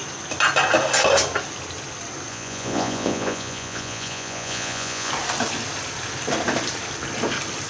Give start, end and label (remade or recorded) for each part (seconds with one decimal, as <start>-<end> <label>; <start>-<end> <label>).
0.0-2.3 recorded; 2.3-5.1 remade; 5.1-7.7 recorded